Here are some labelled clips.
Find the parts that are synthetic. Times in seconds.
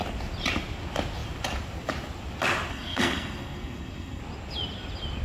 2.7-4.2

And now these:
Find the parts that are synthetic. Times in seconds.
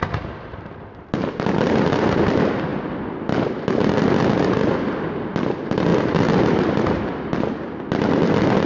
none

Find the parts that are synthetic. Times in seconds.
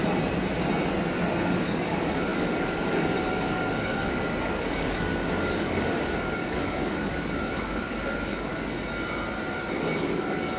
1.3-8.5; 9.7-10.6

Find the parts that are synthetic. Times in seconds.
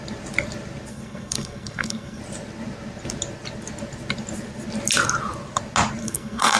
0.9-2.2; 6.0-6.6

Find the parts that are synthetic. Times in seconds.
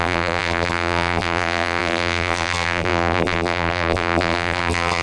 0.0-5.0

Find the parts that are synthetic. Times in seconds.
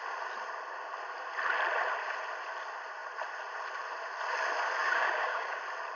4.8-5.6